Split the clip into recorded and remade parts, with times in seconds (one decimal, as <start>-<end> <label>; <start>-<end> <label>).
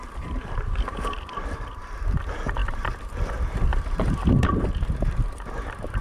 0.0-6.0 remade